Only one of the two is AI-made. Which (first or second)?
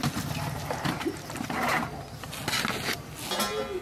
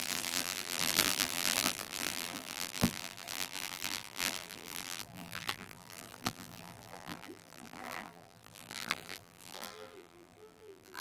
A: second